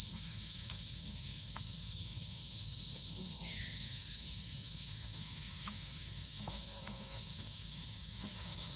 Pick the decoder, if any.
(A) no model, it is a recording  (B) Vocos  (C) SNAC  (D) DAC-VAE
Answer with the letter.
C